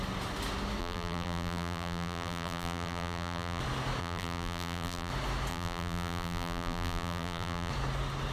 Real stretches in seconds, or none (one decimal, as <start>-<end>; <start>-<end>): 0.0-0.8; 3.6-4.0; 5.1-5.5; 7.7-8.3